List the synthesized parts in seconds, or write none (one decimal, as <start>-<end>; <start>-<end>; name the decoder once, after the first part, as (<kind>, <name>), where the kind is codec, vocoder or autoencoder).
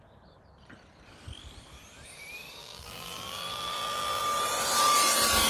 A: 2.6-4.2 (vocoder, BigVGAN v2)